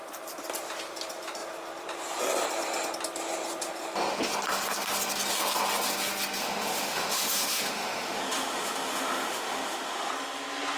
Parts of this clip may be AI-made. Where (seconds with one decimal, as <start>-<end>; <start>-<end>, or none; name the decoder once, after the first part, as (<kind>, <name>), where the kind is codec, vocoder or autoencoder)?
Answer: 6.4-10.1 (autoencoder, DAC-VAE)